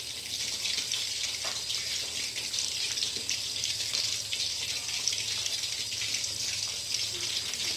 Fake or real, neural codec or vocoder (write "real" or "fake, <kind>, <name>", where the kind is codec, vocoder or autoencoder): real